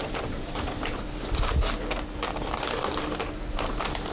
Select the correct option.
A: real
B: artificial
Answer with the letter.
A